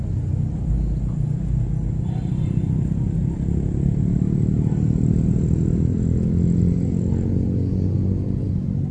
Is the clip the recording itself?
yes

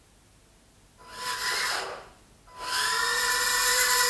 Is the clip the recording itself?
yes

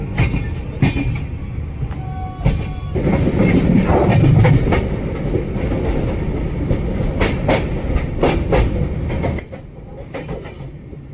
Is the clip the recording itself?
yes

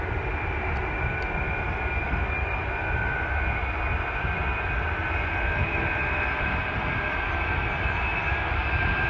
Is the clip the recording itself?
yes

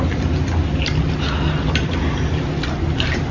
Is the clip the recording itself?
yes